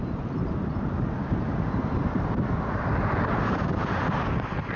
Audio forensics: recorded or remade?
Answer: remade